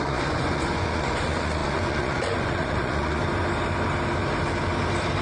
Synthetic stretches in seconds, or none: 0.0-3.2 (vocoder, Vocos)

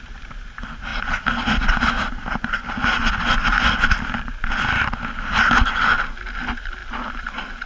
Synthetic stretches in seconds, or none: none

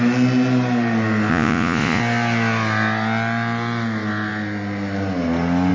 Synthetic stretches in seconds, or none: 1.3-2.0 (vocoder, Vocos)

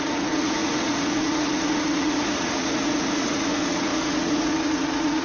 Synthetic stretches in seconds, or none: 0.0-5.2 (vocoder, Vocos)

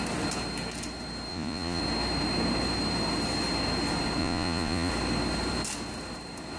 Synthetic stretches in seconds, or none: 1.3-1.8 (vocoder, Vocos); 4.2-4.9